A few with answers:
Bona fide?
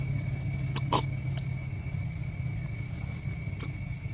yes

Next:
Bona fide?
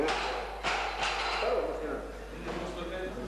yes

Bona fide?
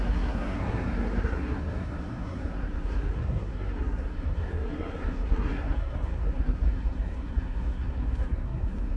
no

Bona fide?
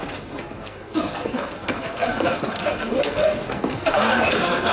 no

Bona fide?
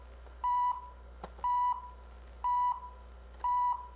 yes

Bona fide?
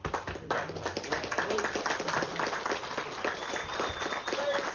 yes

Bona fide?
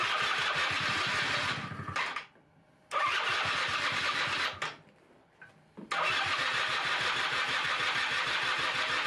yes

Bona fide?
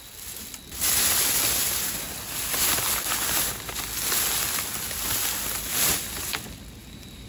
yes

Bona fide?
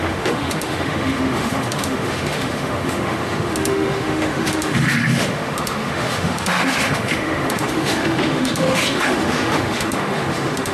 no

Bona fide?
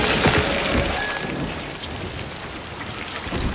yes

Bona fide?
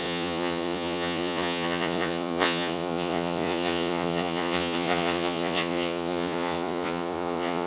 no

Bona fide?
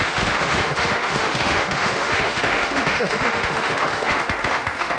no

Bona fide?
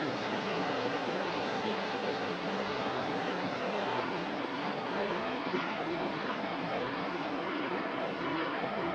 no